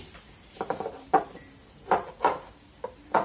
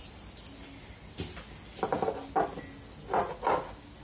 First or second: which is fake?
first